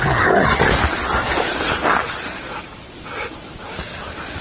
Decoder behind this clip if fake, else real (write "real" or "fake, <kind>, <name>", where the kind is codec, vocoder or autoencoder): real